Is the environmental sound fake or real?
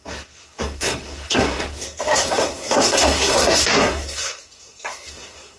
fake